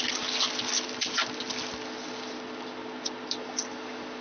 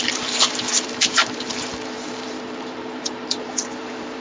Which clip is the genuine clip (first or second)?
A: first